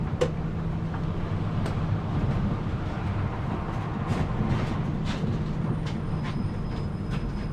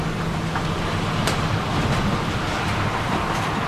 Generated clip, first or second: second